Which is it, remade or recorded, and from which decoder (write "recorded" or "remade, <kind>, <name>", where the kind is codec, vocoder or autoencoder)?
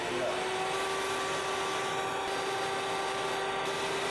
recorded